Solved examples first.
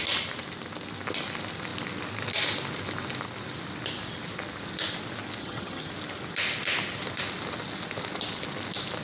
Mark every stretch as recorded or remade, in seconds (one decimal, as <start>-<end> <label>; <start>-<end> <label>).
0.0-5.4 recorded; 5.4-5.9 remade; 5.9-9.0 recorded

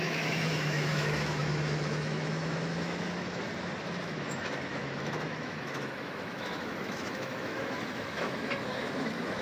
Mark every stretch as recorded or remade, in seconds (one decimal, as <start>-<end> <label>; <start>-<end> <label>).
0.0-3.4 remade; 3.4-4.0 recorded; 4.0-9.4 remade

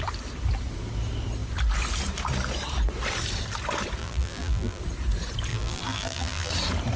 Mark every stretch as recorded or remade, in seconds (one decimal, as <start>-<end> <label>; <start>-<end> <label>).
0.0-4.0 recorded; 4.0-4.8 remade; 4.8-5.5 recorded; 5.5-6.5 remade; 6.5-7.0 recorded

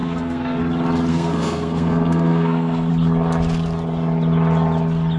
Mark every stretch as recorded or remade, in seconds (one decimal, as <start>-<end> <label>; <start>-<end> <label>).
0.0-0.6 remade; 0.6-1.1 recorded; 1.1-2.9 remade; 2.9-5.2 recorded

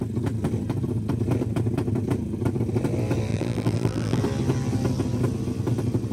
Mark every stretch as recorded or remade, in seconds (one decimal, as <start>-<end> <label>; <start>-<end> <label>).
0.0-3.3 recorded; 3.3-4.2 remade; 4.2-6.1 recorded